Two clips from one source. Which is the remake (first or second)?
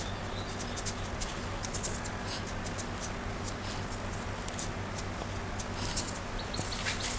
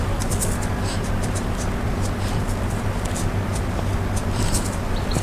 second